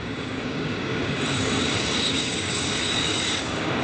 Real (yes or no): no